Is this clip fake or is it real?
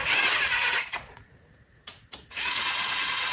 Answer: fake